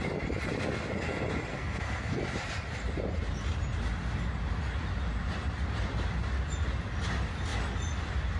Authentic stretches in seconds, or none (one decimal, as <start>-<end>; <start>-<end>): 0.0-1.5; 2.2-8.4